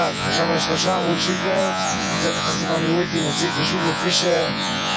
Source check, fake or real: fake